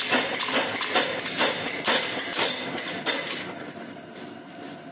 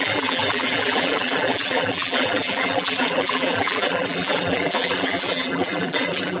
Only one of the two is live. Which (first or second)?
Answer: first